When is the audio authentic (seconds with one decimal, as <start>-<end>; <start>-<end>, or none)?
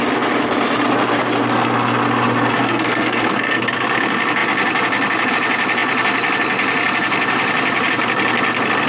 0.0-2.6; 3.6-8.9